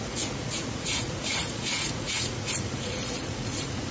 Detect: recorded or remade remade